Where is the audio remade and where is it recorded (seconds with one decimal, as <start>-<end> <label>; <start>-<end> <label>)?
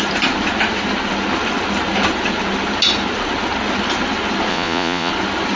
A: 0.0-4.5 recorded; 4.5-5.1 remade; 5.1-5.6 recorded